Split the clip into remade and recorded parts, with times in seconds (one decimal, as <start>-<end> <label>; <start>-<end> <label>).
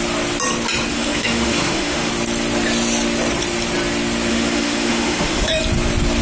0.0-0.9 recorded; 0.9-2.1 remade; 2.1-4.3 recorded; 4.3-5.6 remade; 5.6-6.2 recorded